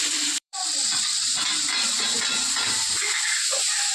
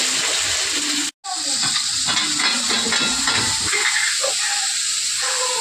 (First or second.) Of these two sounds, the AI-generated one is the first